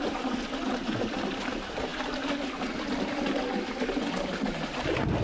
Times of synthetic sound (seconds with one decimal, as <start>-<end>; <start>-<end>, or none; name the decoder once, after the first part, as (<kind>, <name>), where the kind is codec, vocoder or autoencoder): none

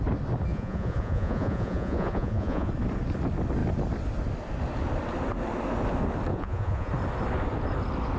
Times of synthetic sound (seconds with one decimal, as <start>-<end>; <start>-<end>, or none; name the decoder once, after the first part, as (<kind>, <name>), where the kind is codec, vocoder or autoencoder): 0.5-2.7 (vocoder, Vocos); 6.3-6.9

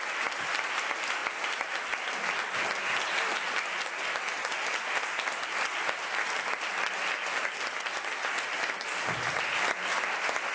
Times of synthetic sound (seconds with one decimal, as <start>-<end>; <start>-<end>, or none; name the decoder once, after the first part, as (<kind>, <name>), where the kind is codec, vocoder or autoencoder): none